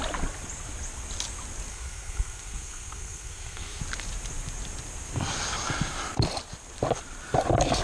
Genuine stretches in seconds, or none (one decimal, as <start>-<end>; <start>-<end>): 0.0-1.7; 3.8-7.8